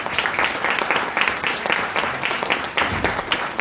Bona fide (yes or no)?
no